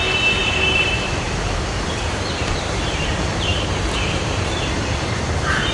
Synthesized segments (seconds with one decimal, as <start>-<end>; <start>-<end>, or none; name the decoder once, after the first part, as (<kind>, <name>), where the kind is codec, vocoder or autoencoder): 0.4-3.1 (vocoder, BigVGAN v2); 3.5-5.2

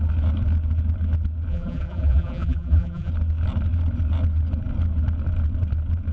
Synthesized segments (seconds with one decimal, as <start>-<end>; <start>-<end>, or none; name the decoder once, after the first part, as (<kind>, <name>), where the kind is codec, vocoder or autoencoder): 1.5-3.1 (vocoder, BigVGAN v2)

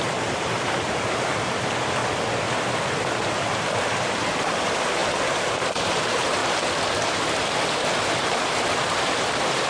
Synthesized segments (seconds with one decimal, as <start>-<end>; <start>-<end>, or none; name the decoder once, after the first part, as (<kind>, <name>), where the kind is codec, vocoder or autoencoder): 0.0-2.0 (vocoder, BigVGAN v2); 4.0-6.4; 8.2-9.7

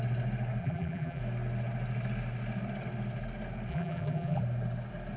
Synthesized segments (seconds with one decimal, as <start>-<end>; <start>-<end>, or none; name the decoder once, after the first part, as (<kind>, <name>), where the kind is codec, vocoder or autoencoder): 0.6-1.2 (vocoder, BigVGAN v2); 3.7-4.4

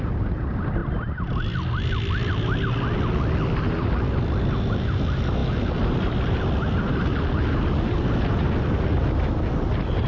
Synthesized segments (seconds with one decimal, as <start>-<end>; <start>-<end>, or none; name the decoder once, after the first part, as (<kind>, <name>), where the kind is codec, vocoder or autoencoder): none

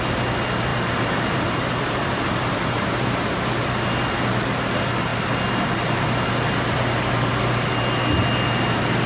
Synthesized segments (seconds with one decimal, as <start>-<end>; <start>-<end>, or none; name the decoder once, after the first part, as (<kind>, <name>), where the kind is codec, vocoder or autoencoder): 0.7-3.4 (vocoder, BigVGAN v2)

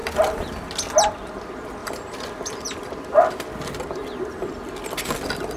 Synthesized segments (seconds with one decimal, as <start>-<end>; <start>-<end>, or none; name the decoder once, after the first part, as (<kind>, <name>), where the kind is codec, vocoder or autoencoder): 0.0-0.7 (vocoder, BigVGAN v2); 1.8-3.3

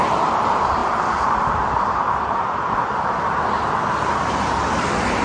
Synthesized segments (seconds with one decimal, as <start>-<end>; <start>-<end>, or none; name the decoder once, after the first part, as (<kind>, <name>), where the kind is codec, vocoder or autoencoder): 0.0-5.2 (vocoder, BigVGAN v2)